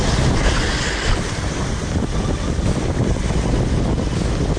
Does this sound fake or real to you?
real